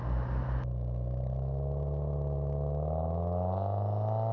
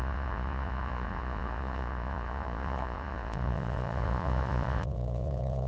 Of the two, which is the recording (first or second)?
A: first